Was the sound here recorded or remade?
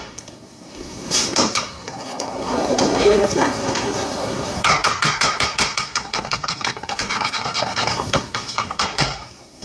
remade